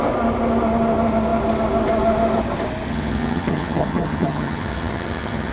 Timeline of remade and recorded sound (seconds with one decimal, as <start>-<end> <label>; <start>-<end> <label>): 0.0-2.9 recorded; 2.9-5.5 remade